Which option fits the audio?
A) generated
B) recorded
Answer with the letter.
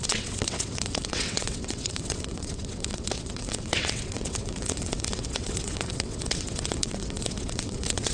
A